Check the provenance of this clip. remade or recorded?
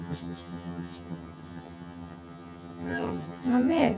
remade